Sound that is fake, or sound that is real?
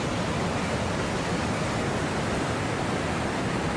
real